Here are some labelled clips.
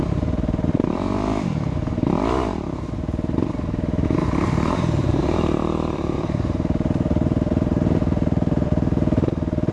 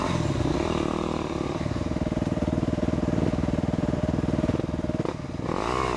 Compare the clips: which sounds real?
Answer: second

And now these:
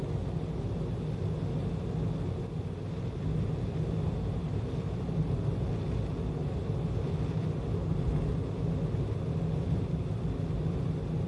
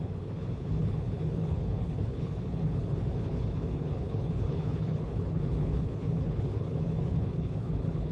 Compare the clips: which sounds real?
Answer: first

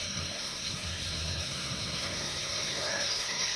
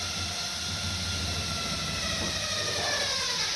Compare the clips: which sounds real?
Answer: second